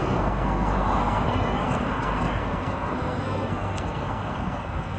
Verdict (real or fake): fake